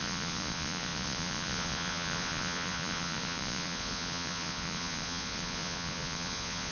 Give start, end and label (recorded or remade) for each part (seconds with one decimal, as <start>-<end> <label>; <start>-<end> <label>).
0.0-6.7 remade